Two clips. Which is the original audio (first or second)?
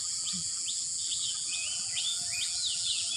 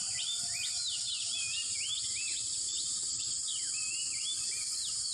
second